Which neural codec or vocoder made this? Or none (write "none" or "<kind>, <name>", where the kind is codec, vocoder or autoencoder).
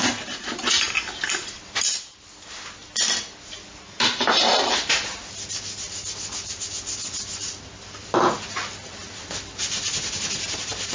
none